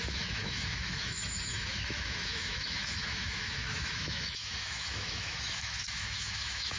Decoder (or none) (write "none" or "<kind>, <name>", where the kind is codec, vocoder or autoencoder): autoencoder, DAC-VAE